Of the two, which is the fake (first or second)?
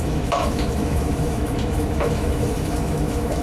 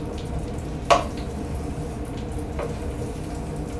first